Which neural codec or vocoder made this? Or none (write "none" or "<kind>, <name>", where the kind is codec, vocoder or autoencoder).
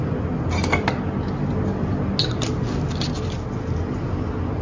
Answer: none